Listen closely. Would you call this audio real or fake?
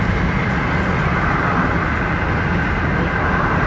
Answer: real